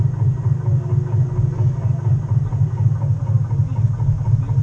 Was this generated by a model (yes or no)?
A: no